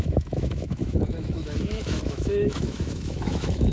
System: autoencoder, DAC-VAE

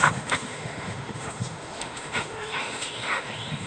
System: autoencoder, DAC-VAE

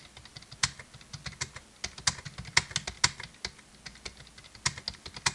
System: none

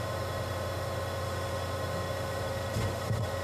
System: autoencoder, DAC-VAE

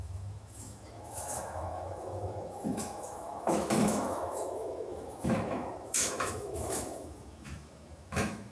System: autoencoder, DAC-VAE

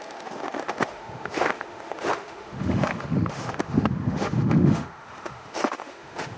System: autoencoder, DAC-VAE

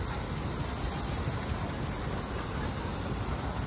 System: none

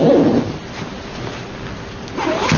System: none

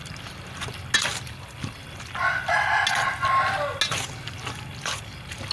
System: none